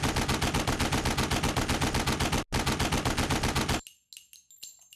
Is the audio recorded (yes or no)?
yes